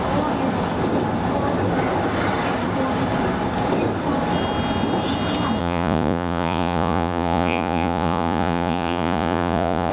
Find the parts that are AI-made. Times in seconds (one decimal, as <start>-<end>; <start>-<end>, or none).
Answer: 5.6-9.9